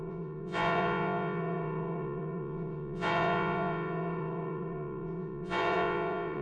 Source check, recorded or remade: remade